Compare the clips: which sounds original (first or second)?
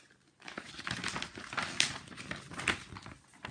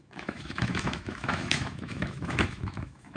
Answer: first